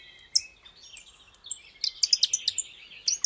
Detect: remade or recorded recorded